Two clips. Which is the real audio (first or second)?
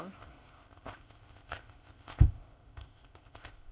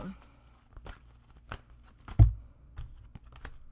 second